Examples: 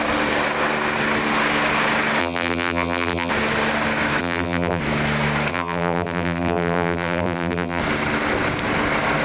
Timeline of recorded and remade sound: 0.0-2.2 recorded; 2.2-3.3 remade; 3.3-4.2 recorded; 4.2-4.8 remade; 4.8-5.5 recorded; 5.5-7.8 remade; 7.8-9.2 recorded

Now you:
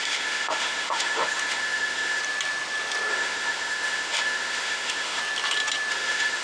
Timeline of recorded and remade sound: 0.0-2.2 remade; 2.2-3.1 recorded; 3.1-5.2 remade; 5.2-5.9 recorded; 5.9-6.4 remade